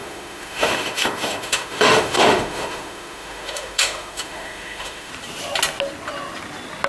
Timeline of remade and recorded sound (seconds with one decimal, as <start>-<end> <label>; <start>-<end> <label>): 0.0-5.1 remade; 5.1-6.9 recorded